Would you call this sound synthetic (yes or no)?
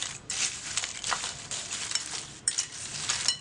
yes